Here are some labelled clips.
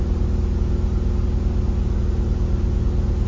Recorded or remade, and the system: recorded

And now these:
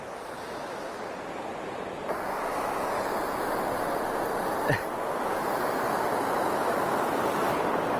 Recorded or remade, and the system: recorded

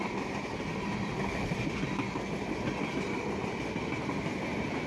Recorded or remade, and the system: recorded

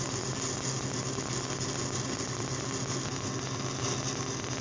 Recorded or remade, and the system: recorded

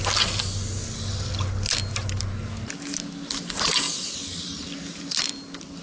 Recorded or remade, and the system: recorded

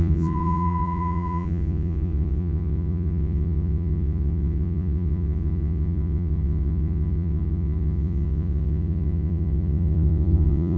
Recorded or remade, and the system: remade, vocoder, Vocos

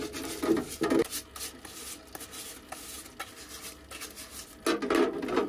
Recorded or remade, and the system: recorded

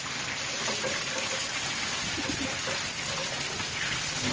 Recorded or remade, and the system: recorded